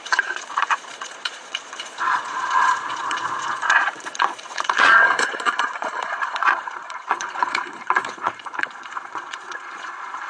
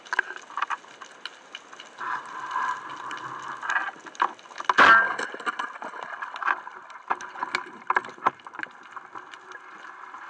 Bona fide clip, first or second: second